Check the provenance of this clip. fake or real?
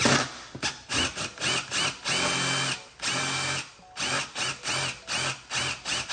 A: real